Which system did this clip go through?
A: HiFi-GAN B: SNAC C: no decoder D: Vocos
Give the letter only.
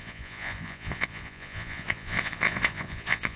D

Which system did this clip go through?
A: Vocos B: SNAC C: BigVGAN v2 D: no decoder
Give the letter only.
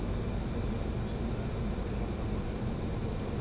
D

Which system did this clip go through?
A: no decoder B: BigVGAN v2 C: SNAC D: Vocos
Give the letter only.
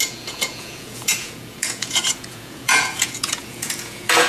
D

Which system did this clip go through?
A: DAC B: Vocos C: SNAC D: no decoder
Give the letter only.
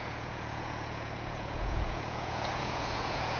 B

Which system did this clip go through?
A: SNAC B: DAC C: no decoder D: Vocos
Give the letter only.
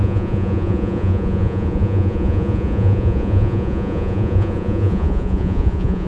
D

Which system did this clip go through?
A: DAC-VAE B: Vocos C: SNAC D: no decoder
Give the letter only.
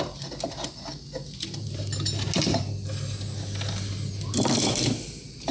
D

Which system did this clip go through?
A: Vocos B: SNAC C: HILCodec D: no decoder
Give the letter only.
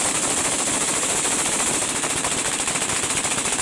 D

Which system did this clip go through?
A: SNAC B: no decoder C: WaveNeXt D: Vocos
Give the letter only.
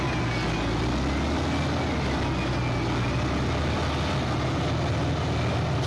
B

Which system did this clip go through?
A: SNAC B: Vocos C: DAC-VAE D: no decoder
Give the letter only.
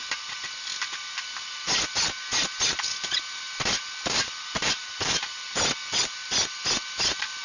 D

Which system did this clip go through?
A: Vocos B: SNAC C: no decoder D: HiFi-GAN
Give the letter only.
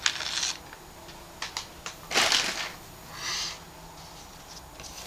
C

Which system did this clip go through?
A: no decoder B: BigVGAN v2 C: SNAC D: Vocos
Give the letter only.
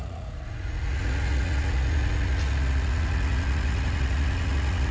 D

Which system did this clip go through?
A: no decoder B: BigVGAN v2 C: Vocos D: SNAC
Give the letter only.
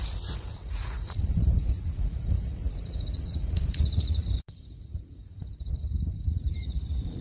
C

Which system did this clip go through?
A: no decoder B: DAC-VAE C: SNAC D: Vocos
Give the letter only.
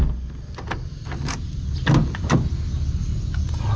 A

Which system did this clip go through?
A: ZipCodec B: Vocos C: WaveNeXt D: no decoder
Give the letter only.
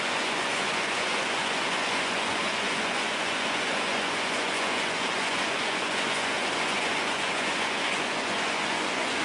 B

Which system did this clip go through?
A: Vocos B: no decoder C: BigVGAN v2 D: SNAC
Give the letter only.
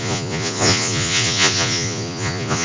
A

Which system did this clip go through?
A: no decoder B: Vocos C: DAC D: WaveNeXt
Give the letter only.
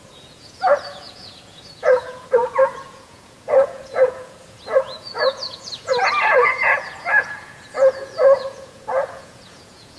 B